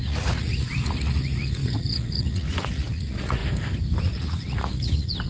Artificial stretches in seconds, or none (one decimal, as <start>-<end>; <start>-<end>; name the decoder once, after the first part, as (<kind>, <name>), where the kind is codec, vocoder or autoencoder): 0.0-3.4 (vocoder, Vocos); 4.0-5.3